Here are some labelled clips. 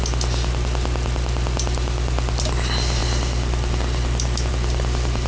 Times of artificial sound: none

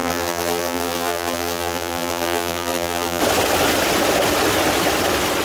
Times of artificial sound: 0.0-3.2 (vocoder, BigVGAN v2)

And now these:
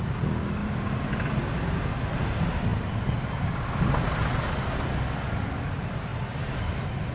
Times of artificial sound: 0.6-1.1 (vocoder, BigVGAN v2)

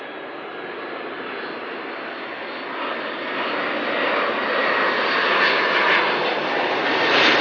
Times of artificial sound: 6.8-7.4 (vocoder, BigVGAN v2)

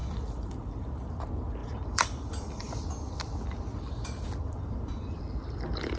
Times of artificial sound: 0.0-1.2 (vocoder, BigVGAN v2); 1.6-2.7; 3.7-5.2